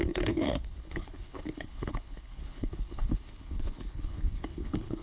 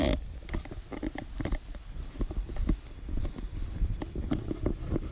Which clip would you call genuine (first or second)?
second